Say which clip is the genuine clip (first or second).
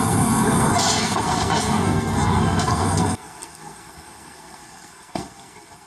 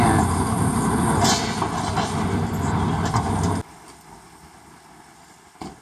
second